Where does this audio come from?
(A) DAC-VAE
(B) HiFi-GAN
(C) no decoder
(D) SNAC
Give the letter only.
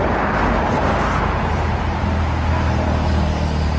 C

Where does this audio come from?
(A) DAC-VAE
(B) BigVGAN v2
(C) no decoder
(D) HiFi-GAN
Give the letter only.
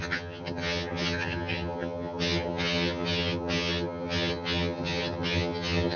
D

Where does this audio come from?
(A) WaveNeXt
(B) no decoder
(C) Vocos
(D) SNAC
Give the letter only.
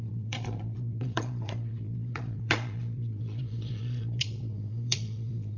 C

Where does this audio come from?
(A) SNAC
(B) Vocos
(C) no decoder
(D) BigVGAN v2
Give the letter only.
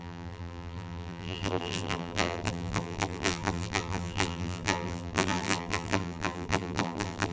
D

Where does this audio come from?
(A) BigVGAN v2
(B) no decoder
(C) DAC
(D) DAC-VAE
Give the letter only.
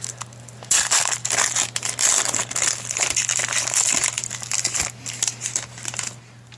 B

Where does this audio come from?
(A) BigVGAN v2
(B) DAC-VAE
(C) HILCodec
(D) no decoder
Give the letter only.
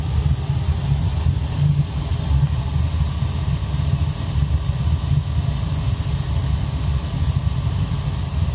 D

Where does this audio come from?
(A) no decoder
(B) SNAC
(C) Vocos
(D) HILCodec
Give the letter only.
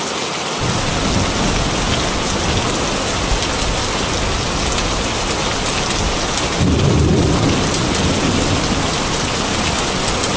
A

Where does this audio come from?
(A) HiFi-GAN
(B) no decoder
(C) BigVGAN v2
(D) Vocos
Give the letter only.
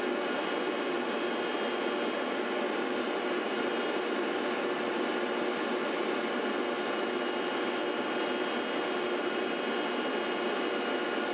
B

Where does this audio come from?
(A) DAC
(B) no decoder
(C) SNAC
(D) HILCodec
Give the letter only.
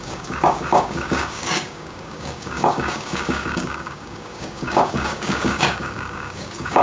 A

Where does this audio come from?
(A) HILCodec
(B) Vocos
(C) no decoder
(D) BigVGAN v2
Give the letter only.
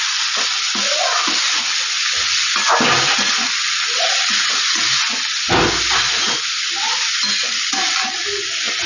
C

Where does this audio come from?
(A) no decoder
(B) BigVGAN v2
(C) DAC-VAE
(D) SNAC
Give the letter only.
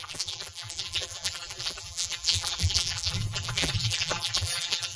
B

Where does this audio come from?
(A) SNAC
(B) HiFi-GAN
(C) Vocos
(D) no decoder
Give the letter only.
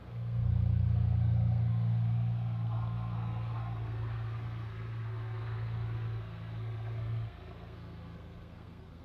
A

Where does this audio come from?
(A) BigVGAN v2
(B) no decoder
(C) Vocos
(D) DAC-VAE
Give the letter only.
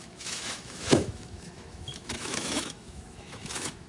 D